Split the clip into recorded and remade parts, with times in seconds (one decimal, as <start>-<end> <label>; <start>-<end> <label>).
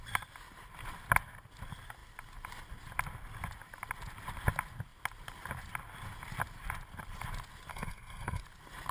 0.0-7.7 recorded; 7.7-8.4 remade; 8.4-8.9 recorded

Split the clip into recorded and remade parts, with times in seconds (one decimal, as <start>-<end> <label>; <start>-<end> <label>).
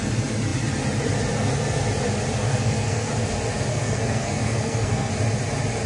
0.0-2.5 recorded; 2.5-3.1 remade; 3.1-3.7 recorded; 3.7-5.1 remade; 5.1-5.9 recorded